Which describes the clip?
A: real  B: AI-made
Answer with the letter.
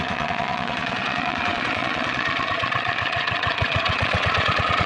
B